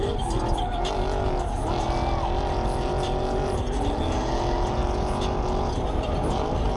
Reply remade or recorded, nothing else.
recorded